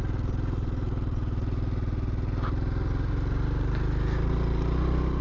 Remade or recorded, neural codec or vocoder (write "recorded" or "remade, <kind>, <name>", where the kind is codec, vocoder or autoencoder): recorded